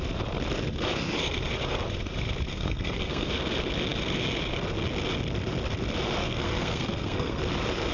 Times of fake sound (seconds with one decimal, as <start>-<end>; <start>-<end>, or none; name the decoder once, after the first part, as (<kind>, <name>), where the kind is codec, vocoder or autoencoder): 2.5-3.3 (codec, SNAC); 6.2-7.4